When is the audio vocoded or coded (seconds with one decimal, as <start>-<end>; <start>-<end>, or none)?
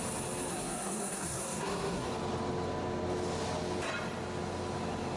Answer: 0.5-2.1